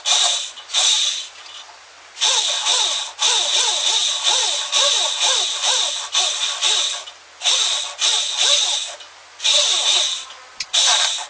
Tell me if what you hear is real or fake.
real